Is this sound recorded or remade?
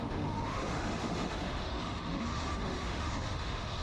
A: remade